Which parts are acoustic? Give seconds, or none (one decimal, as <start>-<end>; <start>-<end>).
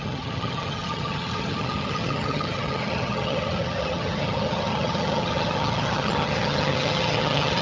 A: none